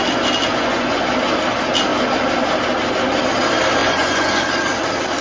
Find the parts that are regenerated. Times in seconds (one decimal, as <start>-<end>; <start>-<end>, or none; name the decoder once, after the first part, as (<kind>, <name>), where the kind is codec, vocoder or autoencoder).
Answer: 0.5-1.0 (vocoder, Vocos); 3.8-4.4